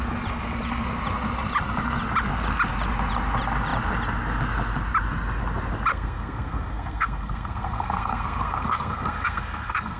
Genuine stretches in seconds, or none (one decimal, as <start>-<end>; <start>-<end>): 0.0-5.9